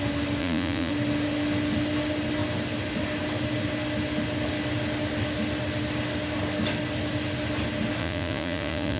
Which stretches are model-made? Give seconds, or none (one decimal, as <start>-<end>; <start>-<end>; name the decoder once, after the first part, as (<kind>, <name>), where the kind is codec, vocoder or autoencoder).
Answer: 0.4-0.9 (vocoder, Vocos); 8.0-9.0